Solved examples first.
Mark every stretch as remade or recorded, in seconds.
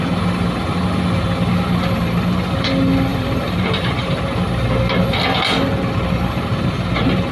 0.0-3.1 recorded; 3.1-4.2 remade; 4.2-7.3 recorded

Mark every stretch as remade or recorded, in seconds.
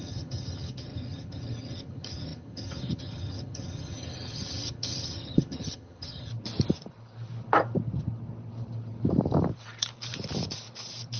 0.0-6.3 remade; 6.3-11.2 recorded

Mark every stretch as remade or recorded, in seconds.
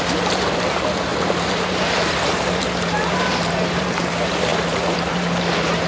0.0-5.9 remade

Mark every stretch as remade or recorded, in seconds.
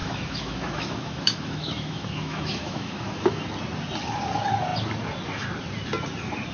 0.0-3.4 remade; 3.4-6.5 recorded